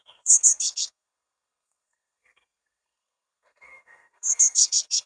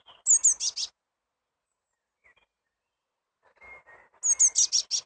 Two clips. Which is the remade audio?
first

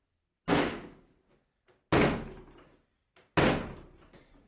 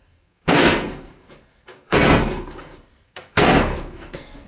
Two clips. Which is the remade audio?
second